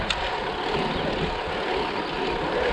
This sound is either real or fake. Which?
real